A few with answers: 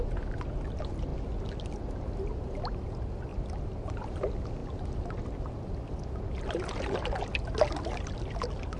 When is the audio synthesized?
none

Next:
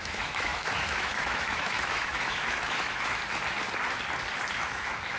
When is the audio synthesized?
0.0-3.2 (autoencoder, DAC-VAE); 4.5-5.2